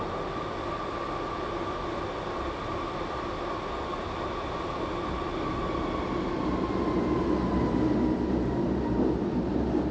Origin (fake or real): real